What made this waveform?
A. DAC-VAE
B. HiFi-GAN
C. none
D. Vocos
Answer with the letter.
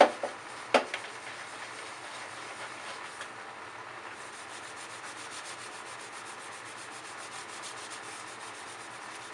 C